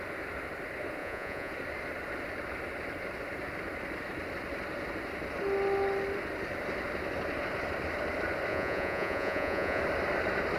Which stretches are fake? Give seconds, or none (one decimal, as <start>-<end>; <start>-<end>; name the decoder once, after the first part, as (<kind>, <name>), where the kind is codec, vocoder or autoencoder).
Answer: 1.0-1.5 (vocoder, Vocos); 8.5-9.8